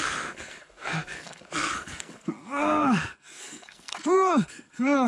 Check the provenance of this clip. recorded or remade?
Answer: remade